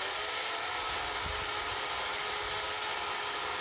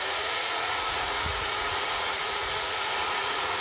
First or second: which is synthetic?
second